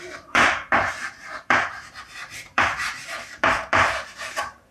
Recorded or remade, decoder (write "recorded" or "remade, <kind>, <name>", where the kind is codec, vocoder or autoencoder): remade, vocoder, BigVGAN v2